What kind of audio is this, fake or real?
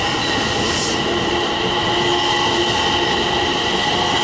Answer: real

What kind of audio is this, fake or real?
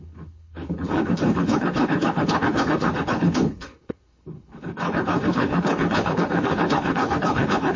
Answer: fake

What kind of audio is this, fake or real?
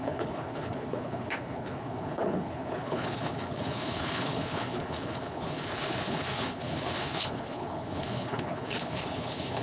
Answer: fake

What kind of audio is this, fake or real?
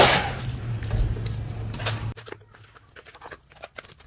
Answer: real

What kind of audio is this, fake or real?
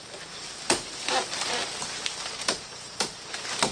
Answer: real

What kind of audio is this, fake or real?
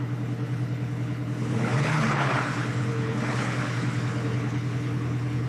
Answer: fake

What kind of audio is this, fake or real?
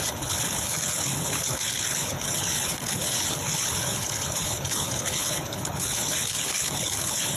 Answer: fake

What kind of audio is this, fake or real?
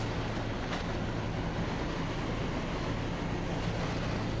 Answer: real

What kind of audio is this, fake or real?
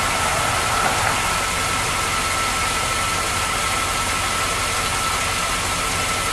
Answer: real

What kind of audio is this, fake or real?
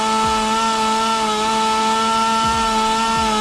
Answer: real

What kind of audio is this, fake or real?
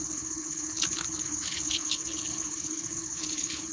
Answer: fake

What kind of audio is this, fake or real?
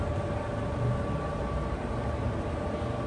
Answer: real